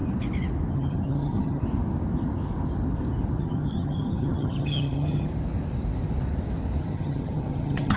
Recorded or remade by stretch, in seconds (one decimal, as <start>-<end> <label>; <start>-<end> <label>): 0.0-0.7 recorded; 0.7-1.6 remade; 1.6-3.4 recorded; 3.4-5.3 remade; 5.3-6.8 recorded; 6.8-8.0 remade